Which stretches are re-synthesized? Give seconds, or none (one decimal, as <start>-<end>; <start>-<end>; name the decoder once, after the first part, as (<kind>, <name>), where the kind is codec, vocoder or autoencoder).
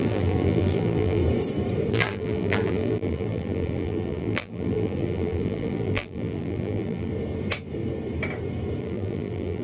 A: 0.0-1.2 (vocoder, BigVGAN v2); 1.9-7.1; 8.8-9.6